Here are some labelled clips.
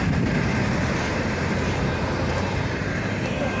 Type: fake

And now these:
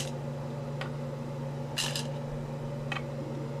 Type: real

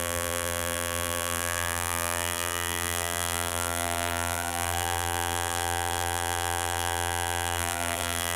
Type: fake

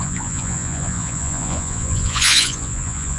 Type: fake